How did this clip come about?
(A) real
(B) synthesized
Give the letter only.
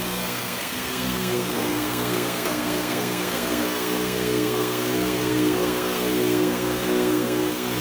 B